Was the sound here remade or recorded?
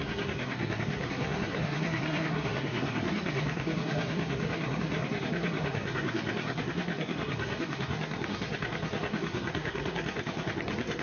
remade